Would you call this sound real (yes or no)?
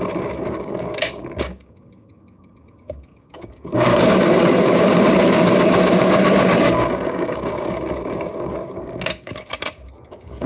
no